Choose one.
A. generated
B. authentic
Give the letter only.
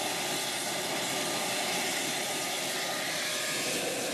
B